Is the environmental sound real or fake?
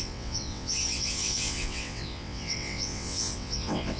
fake